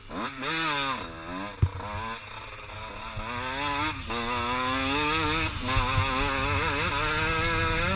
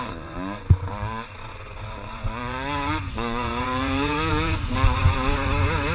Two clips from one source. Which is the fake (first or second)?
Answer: second